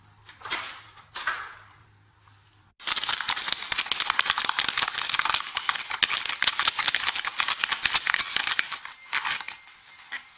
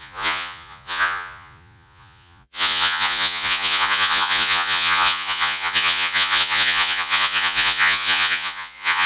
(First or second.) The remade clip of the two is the second